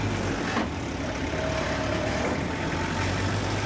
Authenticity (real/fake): fake